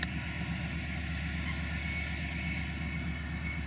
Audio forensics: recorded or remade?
recorded